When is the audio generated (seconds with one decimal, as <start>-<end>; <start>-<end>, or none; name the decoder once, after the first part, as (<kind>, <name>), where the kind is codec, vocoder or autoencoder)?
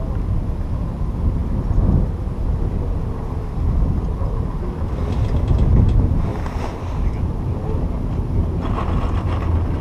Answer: none